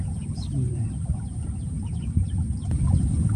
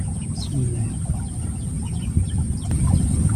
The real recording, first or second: second